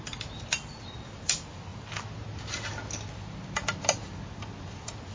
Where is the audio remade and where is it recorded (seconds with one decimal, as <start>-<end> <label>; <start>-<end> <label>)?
0.0-5.1 recorded